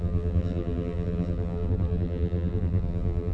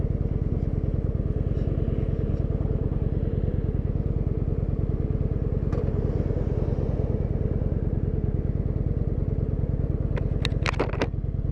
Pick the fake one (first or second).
first